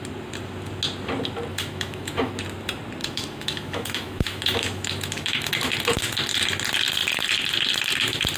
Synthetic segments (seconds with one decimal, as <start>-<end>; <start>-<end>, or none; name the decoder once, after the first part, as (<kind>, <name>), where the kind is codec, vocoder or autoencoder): 1.5-2.3 (autoencoder, DAC-VAE); 3.0-5.5